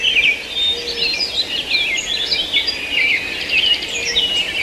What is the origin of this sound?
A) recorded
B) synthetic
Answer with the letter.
A